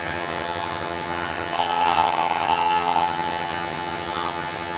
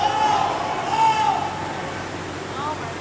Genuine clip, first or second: second